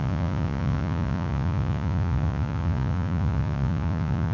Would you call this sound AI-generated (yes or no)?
yes